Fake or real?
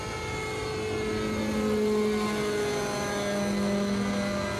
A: real